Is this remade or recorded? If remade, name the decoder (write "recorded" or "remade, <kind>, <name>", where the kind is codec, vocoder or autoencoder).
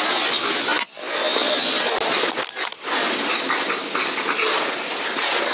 recorded